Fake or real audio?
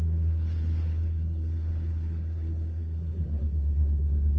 fake